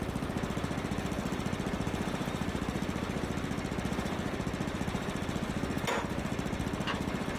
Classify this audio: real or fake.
real